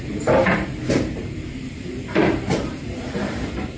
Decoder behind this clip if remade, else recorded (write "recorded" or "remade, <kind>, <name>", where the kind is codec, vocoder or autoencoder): remade, vocoder, BigVGAN v2